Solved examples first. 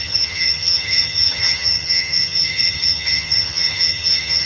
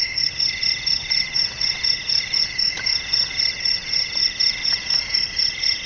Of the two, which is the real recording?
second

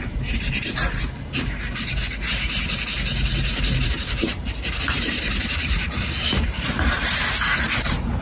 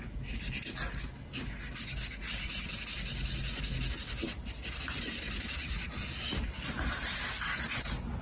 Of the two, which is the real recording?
second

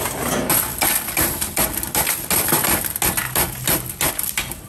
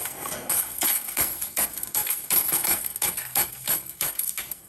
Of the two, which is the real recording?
first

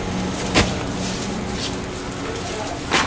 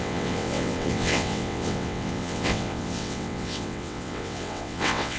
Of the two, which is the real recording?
first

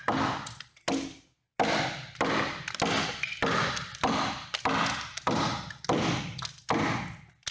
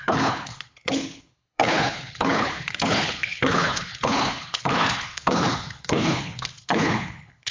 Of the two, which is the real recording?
first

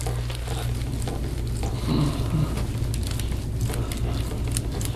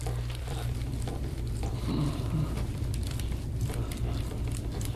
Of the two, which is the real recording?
first